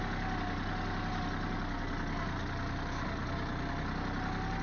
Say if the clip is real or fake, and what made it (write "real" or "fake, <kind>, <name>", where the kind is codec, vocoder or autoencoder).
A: real